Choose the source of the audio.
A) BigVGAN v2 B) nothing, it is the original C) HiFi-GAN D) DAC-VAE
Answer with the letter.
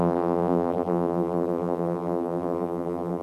A